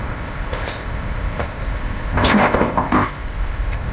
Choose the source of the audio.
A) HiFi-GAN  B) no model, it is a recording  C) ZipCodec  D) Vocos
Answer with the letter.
C